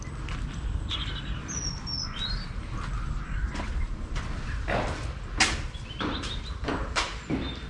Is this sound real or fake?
real